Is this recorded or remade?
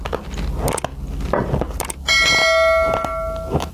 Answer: recorded